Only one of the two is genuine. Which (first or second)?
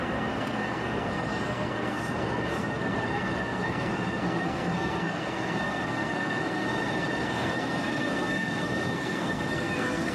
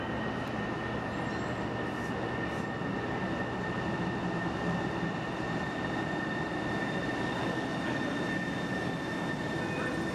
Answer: second